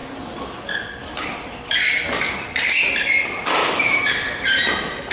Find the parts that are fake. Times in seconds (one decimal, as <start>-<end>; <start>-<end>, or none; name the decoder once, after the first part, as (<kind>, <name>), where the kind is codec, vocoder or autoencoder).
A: 3.6-4.1 (autoencoder, DAC-VAE)